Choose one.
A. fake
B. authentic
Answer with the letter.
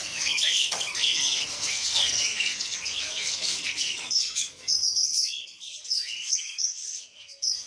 A